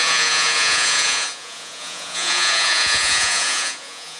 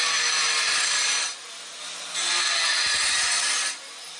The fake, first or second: first